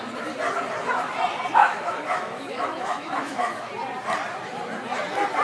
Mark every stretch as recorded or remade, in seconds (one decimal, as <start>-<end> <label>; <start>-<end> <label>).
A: 0.0-1.6 recorded; 1.6-3.7 remade; 3.7-5.4 recorded